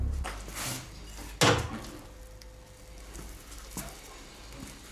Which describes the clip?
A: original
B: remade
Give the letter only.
A